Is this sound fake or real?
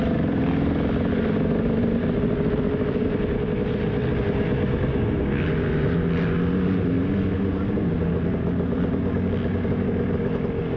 real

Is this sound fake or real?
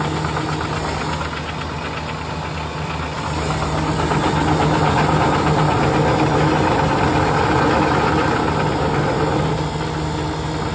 real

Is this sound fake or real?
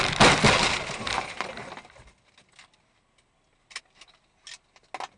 real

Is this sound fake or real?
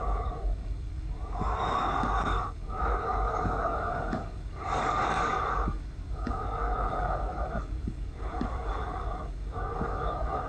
fake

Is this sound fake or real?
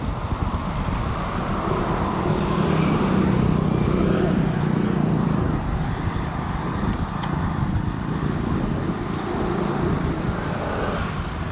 real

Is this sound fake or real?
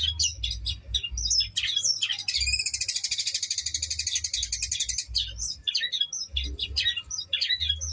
real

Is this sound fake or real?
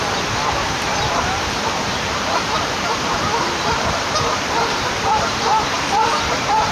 fake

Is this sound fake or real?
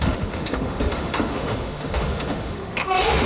fake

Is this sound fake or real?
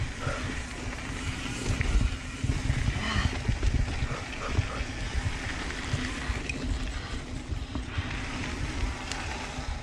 real